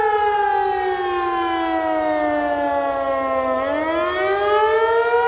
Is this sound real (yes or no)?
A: yes